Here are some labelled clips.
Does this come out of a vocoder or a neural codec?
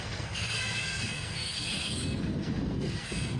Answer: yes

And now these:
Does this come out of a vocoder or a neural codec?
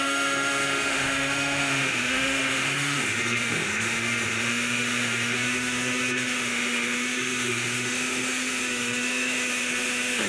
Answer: yes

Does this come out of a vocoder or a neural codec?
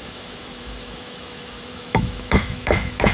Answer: yes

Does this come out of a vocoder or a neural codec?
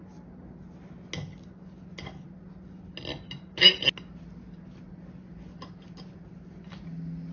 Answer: no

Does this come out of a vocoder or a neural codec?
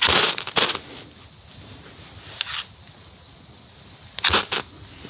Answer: no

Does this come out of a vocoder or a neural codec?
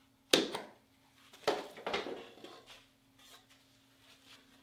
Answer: no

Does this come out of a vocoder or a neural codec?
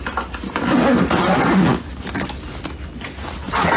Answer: no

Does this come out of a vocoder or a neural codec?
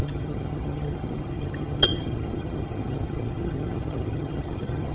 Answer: yes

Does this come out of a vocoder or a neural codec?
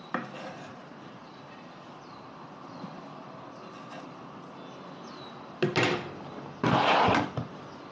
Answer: no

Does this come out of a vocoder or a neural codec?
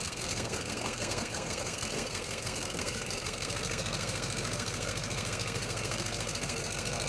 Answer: yes